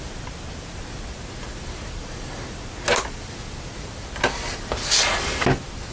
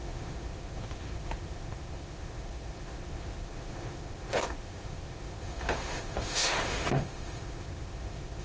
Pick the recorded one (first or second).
first